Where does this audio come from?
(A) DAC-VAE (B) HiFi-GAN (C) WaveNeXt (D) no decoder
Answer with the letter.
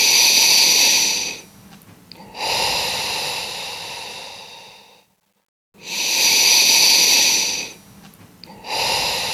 D